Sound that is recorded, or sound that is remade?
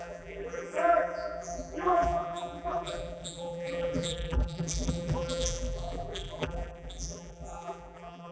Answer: remade